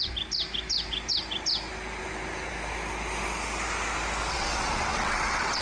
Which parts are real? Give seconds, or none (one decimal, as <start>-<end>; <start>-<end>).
0.0-4.3